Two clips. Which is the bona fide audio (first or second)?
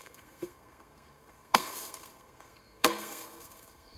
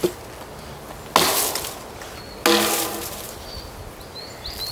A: second